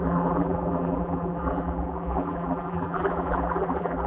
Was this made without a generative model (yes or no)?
no